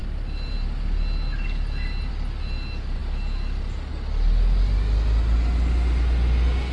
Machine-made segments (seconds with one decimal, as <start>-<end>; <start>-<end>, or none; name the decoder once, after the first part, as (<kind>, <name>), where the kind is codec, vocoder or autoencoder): none